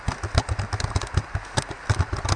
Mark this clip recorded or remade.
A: recorded